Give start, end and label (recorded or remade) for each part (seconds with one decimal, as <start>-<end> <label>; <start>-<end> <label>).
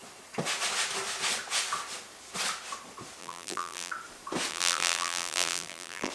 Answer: 0.0-3.2 recorded; 3.2-3.9 remade; 3.9-4.5 recorded; 4.5-6.1 remade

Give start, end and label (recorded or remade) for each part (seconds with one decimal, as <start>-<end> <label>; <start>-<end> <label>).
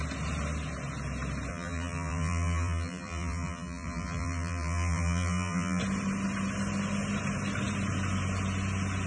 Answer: 0.0-1.5 recorded; 1.5-5.8 remade; 5.8-9.1 recorded